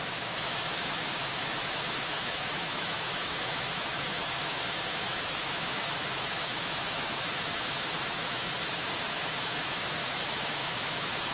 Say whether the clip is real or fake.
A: fake